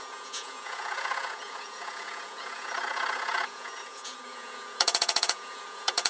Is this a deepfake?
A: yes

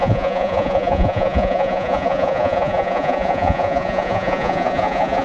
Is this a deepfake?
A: yes